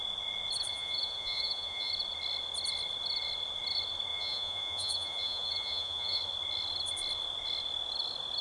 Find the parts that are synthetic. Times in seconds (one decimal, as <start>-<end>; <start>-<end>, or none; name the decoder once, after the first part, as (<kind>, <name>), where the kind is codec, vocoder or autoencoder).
0.7-1.9 (vocoder, Vocos); 4.1-6.2